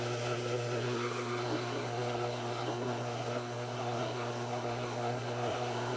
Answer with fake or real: fake